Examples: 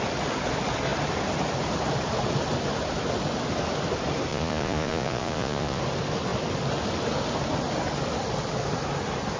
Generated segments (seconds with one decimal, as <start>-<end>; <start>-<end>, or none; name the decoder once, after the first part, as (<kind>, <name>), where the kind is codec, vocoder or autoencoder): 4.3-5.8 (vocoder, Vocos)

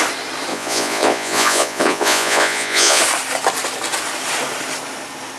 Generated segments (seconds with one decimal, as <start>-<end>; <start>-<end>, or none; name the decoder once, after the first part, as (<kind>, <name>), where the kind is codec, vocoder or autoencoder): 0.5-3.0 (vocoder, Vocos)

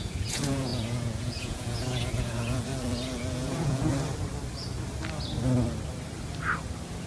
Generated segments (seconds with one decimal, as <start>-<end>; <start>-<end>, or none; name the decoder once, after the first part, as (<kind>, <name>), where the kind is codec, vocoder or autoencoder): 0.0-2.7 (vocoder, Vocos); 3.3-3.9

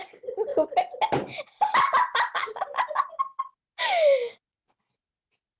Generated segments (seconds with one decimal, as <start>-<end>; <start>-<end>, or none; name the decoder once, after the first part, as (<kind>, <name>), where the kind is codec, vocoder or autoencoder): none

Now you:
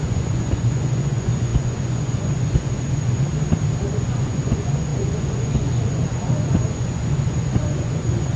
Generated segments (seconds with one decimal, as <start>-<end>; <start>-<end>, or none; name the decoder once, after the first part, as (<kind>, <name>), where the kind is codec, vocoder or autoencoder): 0.0-3.3 (vocoder, Vocos); 3.8-8.4

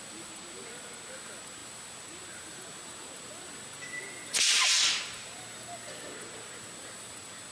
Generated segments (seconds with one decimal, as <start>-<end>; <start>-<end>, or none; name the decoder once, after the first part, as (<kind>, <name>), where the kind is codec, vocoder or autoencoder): none

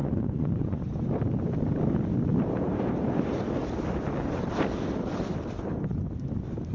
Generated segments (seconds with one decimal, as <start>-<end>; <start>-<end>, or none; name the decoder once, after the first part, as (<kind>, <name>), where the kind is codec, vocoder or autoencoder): 0.0-0.8 (vocoder, Vocos)

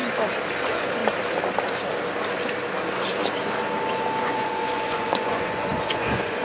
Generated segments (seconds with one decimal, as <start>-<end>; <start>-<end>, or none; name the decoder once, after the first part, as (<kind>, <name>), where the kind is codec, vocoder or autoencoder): 0.6-1.0 (vocoder, Vocos); 4.2-6.4